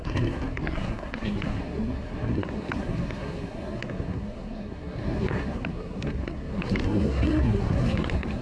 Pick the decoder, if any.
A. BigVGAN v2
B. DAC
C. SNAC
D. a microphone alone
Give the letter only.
C